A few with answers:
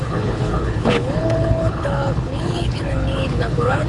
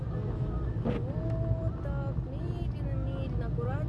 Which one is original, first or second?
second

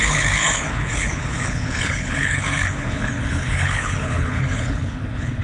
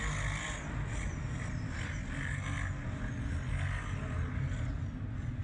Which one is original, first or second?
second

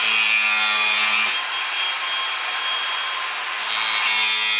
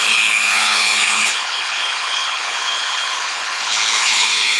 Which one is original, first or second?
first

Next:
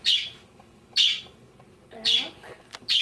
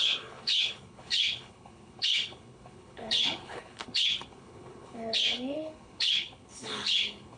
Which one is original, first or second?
first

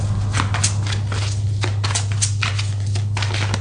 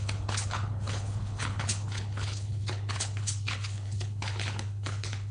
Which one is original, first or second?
first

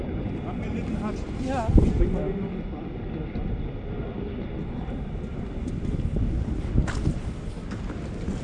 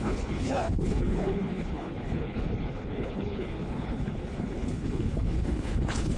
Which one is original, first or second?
first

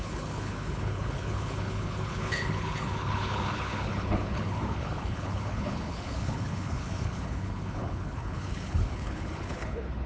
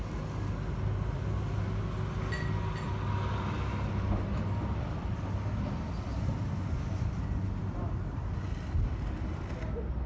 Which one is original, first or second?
second